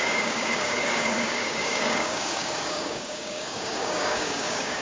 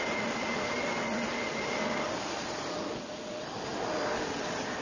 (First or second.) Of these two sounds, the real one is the second